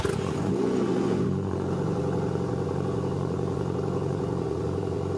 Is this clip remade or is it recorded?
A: remade